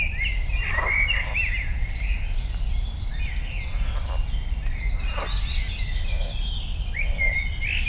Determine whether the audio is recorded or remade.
recorded